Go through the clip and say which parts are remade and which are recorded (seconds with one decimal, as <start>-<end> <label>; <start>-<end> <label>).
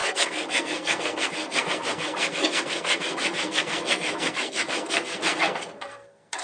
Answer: 0.0-6.4 remade